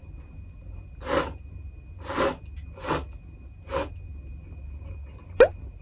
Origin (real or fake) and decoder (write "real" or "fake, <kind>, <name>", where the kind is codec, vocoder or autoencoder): real